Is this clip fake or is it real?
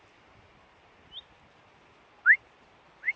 real